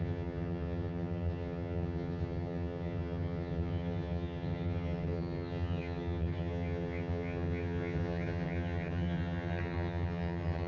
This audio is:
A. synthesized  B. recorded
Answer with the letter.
A